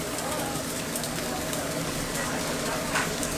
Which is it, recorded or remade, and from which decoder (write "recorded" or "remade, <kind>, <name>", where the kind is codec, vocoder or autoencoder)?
remade, codec, DAC